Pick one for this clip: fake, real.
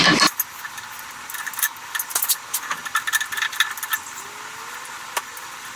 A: real